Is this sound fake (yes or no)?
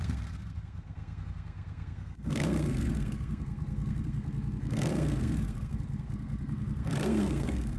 yes